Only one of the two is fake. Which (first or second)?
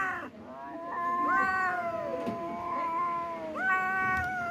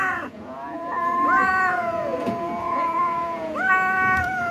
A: second